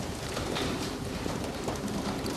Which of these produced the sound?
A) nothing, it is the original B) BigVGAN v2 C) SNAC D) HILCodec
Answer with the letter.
B